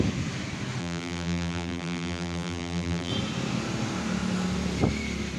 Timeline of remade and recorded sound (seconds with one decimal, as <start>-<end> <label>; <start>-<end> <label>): 0.0-0.8 recorded; 0.8-3.1 remade; 3.1-5.4 recorded